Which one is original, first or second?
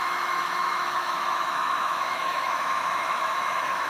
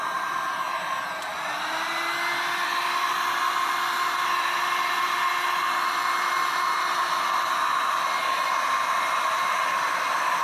second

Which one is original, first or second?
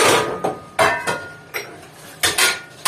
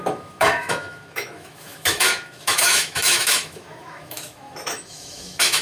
first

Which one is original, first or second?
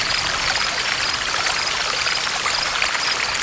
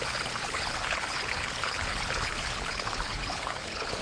first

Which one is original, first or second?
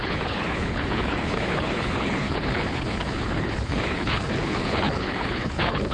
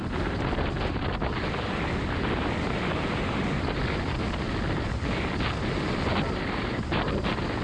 second